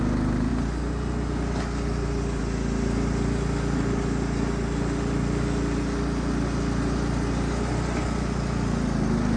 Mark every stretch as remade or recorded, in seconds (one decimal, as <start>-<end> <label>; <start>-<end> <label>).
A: 0.0-9.4 recorded